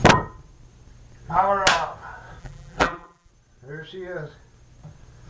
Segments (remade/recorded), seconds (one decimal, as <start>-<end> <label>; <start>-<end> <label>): 0.0-2.4 recorded; 2.4-3.3 remade; 3.3-5.3 recorded